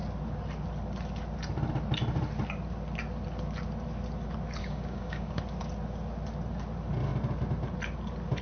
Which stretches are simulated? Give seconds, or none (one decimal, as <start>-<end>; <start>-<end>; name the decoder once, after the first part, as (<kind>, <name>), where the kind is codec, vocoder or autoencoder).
4.6-5.4 (codec, DAC)